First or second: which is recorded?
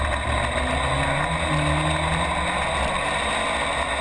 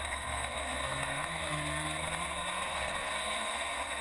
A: first